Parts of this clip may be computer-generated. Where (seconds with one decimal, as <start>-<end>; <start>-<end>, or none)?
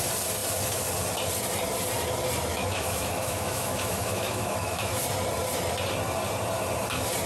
2.5-5.0